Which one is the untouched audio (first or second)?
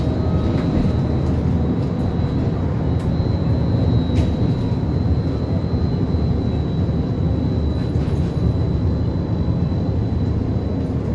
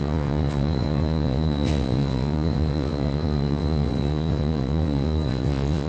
first